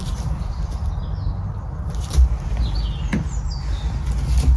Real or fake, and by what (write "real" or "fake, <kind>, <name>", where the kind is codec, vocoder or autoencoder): real